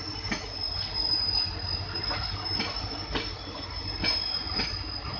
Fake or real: real